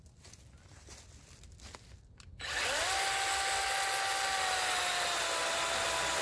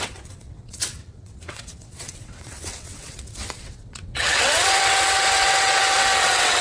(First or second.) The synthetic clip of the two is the second